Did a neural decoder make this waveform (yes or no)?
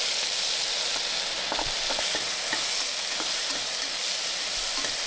no